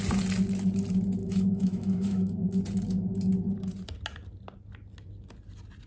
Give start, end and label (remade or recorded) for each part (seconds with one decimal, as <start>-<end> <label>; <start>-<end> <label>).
0.0-1.2 recorded; 1.2-2.6 remade; 2.6-5.9 recorded